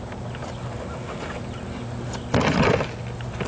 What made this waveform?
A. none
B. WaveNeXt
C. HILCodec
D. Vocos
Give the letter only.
A